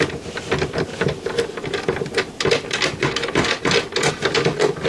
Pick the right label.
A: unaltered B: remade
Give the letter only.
A